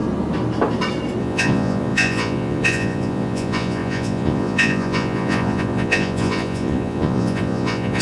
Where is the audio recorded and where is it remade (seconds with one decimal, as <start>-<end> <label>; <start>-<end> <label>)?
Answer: 0.0-1.2 recorded; 1.2-8.0 remade